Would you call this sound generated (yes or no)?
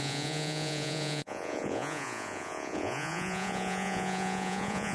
yes